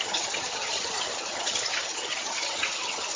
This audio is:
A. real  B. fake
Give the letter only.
B